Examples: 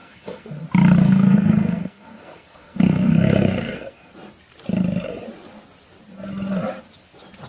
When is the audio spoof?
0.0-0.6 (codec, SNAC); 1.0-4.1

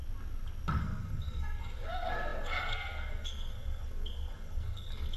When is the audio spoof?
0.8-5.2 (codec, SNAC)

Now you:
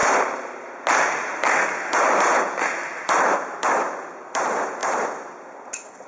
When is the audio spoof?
none

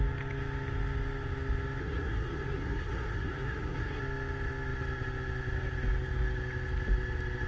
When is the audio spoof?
1.8-4.0 (codec, SNAC)

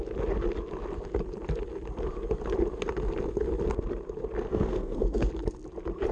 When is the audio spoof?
4.5-5.3 (codec, SNAC)

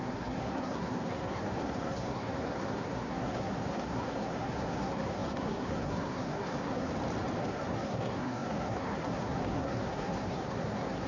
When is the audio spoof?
0.0-6.9 (codec, SNAC); 7.4-11.1

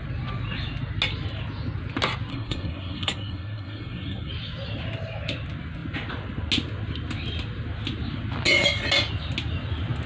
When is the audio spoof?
2.3-4.3 (codec, SNAC)